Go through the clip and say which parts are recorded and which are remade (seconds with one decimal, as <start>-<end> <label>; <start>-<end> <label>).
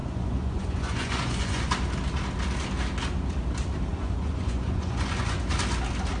0.0-1.7 remade; 1.7-3.9 recorded; 3.9-5.4 remade; 5.4-6.2 recorded